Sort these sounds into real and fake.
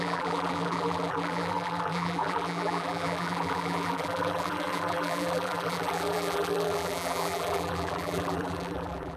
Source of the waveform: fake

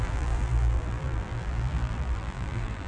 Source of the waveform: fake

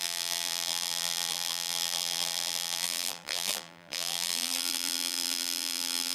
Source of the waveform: fake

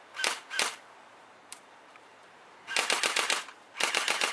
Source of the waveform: fake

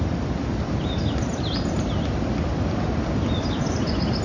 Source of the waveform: real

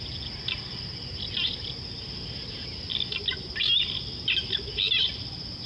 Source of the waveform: real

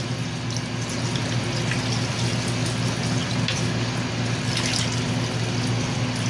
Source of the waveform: real